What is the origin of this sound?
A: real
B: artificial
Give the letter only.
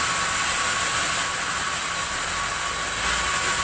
A